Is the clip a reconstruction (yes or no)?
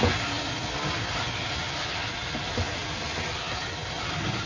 no